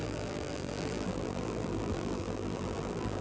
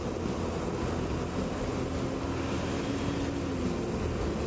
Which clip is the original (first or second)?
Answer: second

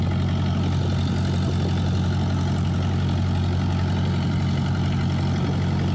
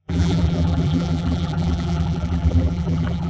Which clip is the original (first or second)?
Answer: first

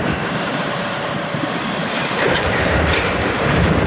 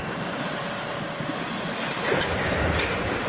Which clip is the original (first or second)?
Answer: second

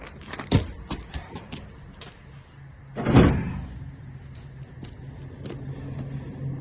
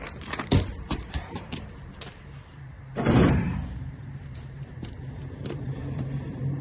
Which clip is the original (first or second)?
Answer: first